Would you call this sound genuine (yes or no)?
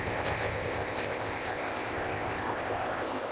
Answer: no